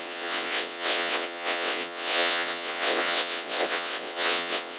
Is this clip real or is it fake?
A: fake